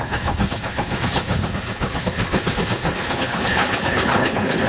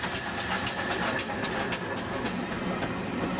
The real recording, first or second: second